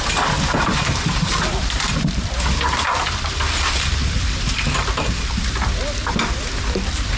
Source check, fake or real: fake